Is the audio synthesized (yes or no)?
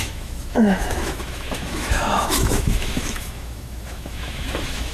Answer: yes